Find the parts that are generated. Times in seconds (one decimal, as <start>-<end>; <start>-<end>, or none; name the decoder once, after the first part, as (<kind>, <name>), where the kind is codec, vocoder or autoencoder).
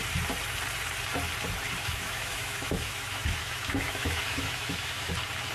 1.8-5.1 (autoencoder, DAC-VAE)